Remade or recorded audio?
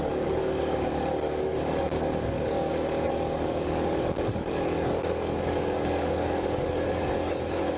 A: remade